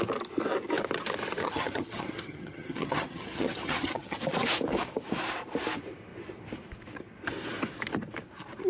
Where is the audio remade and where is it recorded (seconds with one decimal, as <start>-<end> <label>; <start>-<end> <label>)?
0.0-1.4 recorded; 1.4-4.2 remade; 4.2-8.7 recorded